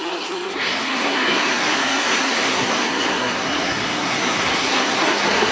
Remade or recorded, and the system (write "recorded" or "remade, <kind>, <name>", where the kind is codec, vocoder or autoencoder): remade, codec, SNAC